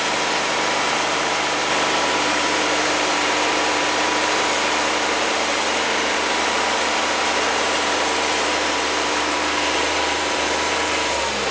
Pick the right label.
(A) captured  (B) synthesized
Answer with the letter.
B